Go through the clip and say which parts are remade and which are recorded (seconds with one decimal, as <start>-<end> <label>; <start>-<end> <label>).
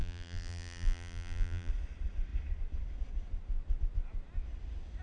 0.0-1.7 remade; 1.7-5.0 recorded